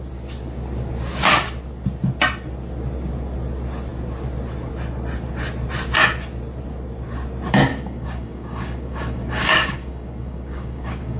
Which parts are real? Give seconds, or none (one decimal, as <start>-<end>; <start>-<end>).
0.0-7.7